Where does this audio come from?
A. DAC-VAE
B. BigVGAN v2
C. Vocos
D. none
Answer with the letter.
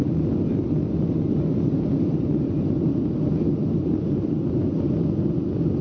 D